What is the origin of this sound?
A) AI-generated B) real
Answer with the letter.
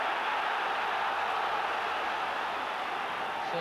B